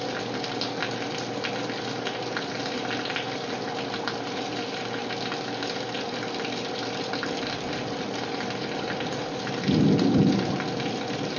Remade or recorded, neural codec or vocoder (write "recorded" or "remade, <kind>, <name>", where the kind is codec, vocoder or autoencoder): recorded